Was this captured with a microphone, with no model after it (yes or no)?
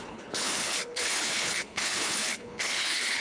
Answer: no